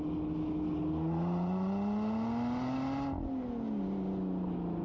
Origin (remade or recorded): recorded